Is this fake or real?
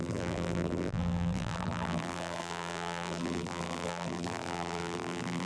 fake